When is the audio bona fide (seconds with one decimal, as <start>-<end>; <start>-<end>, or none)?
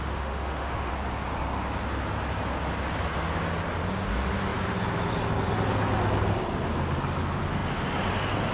0.9-8.5